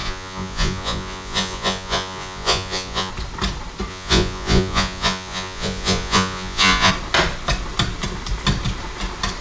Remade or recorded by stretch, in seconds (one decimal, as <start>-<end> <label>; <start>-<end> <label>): 0.0-3.1 remade; 3.1-3.9 recorded; 3.9-6.9 remade; 6.9-9.4 recorded